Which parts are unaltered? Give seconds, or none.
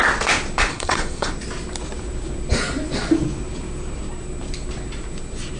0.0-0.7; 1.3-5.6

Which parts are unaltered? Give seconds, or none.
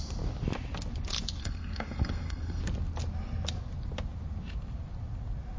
0.0-1.4; 2.6-5.6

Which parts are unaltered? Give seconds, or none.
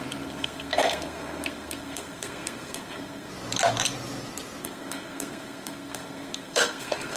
3.3-4.6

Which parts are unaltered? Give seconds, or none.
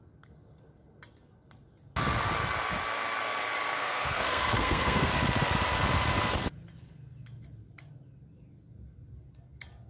0.0-3.8; 5.1-9.9